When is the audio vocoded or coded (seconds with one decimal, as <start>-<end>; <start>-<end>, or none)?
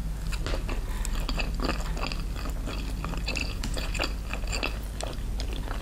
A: 3.4-4.0